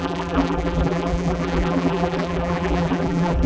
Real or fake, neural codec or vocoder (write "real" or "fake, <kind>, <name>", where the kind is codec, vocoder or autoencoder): fake, vocoder, BigVGAN v2